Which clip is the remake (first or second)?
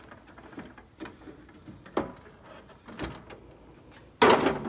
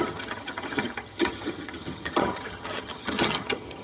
second